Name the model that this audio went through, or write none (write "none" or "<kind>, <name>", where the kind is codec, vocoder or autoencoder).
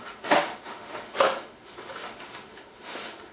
autoencoder, DAC-VAE